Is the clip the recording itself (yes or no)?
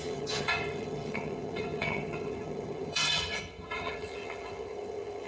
no